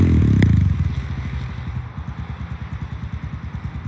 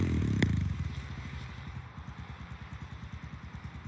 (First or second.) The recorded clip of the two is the first